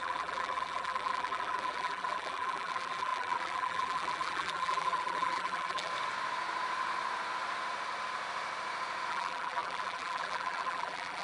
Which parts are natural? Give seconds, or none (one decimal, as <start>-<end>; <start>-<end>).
5.9-9.1